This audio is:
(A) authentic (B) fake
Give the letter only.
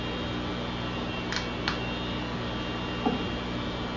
A